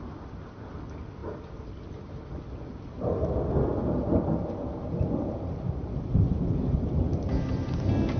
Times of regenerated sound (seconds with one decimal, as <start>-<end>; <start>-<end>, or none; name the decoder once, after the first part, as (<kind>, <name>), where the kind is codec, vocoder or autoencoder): none